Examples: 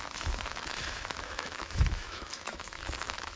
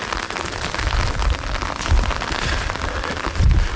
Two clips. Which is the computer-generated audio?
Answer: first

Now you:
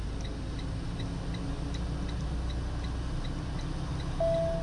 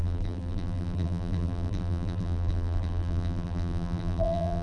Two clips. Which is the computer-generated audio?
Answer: second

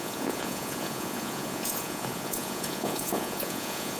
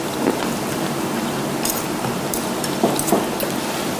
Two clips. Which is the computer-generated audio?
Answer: first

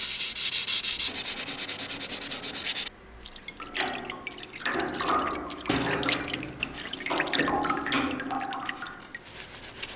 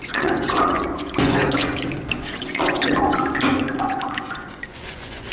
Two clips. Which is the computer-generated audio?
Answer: second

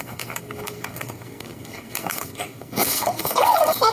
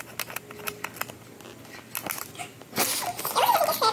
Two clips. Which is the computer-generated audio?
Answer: first